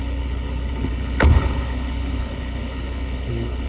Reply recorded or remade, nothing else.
remade